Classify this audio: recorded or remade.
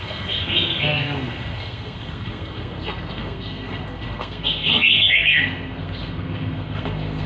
remade